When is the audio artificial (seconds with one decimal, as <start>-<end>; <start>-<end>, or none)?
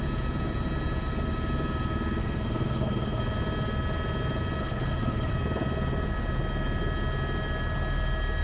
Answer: 2.2-3.2; 4.6-5.3